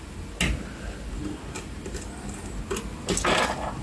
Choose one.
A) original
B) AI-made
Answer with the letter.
A